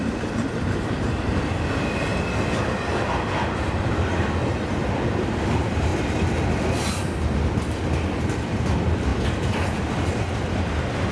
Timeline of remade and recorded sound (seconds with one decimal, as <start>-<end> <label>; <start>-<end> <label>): 0.0-2.1 remade; 2.1-3.6 recorded; 3.6-5.9 remade; 5.9-6.5 recorded; 6.5-11.1 remade